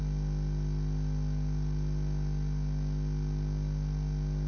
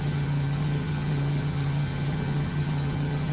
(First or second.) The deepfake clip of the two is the second